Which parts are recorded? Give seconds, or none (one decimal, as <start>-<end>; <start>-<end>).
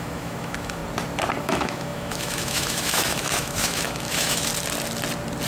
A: 0.8-1.4; 4.5-5.5